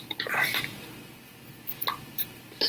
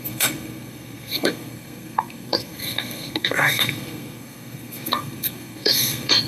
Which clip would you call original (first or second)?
first